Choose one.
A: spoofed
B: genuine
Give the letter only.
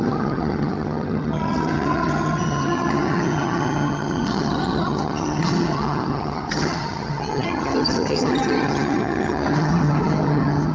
A